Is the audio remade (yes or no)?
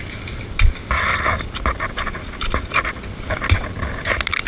no